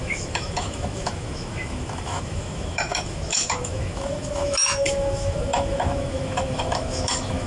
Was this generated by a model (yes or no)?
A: yes